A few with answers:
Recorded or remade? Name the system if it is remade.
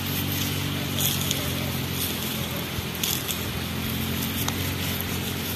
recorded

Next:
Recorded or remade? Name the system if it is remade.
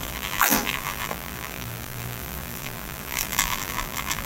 remade, vocoder, BigVGAN v2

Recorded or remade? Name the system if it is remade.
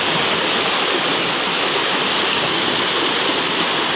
recorded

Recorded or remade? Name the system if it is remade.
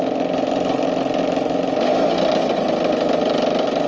recorded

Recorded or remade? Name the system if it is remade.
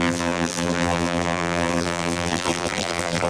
remade, vocoder, BigVGAN v2